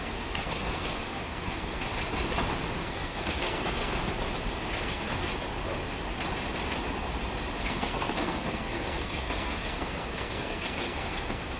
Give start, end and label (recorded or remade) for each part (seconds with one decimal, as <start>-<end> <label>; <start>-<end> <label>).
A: 0.0-1.8 remade; 1.8-2.8 recorded; 2.8-4.0 remade; 4.0-4.8 recorded; 4.8-5.3 remade; 5.3-7.6 recorded; 7.6-11.6 remade